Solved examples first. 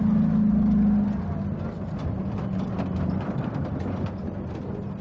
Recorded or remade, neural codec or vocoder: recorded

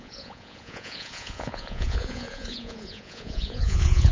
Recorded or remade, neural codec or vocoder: remade, vocoder, Vocos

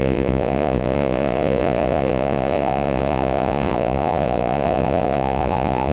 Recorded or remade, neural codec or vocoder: remade, vocoder, Vocos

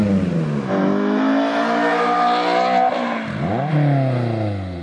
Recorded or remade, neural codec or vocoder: recorded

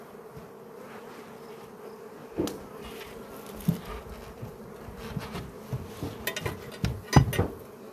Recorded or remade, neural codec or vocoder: recorded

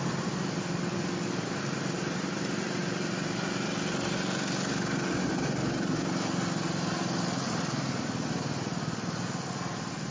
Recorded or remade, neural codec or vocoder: recorded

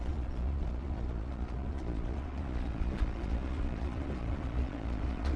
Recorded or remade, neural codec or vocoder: remade, vocoder, Vocos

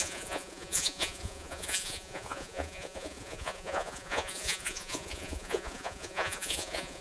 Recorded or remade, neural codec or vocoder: remade, vocoder, Vocos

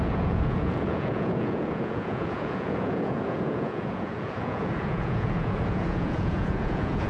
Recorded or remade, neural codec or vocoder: remade, vocoder, Vocos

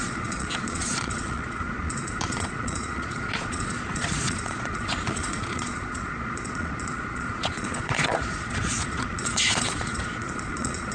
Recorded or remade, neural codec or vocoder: remade, vocoder, Vocos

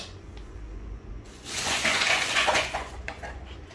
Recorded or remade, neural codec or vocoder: remade, vocoder, Vocos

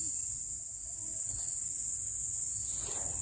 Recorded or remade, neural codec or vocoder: recorded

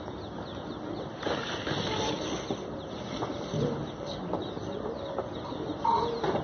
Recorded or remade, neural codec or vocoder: recorded